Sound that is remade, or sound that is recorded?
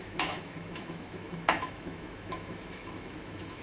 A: remade